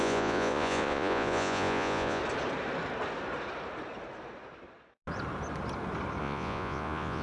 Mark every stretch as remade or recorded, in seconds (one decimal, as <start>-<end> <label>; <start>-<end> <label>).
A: 0.0-2.2 remade; 2.2-6.2 recorded; 6.2-7.2 remade